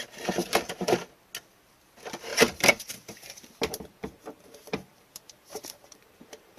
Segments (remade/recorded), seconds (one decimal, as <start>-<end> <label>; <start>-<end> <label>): 0.0-0.4 recorded; 0.4-0.9 remade; 0.9-2.3 recorded; 2.3-6.6 remade